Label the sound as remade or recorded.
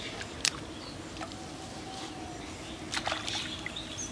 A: recorded